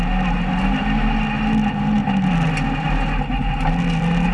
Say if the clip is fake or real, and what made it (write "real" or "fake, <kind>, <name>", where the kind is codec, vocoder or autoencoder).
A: real